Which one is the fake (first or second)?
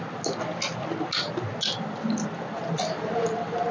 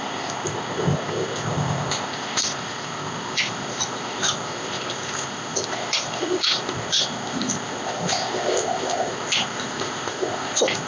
second